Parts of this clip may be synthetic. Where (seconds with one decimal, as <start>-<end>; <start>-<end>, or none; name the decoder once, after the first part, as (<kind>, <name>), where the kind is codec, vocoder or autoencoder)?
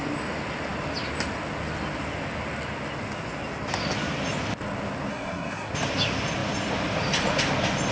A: 5.1-5.7 (codec, SNAC)